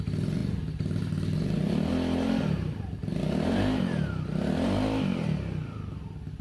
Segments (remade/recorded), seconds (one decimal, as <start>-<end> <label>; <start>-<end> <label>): 0.0-6.4 recorded